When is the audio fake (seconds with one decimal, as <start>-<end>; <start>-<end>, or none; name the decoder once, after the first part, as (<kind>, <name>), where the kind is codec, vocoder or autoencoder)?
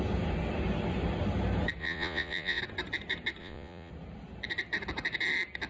1.8-2.6 (vocoder, Vocos); 3.4-3.9